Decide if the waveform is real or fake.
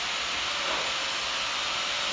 real